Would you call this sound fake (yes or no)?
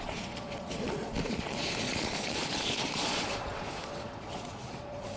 yes